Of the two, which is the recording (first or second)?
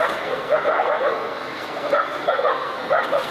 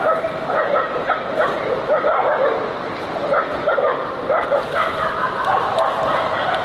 second